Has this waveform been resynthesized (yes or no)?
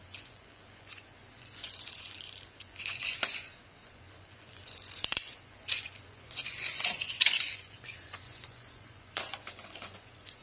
yes